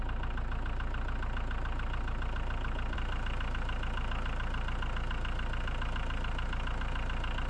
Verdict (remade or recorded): recorded